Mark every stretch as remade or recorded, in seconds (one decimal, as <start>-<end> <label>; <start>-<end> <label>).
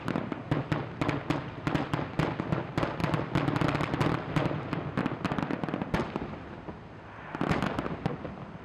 0.0-8.6 recorded